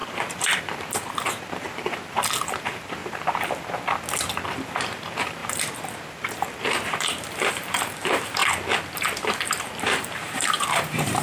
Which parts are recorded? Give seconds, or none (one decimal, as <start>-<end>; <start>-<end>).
3.0-4.7; 8.4-9.3